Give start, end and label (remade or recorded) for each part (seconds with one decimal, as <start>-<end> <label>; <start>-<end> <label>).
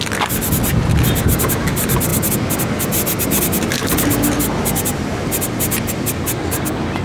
0.0-7.0 recorded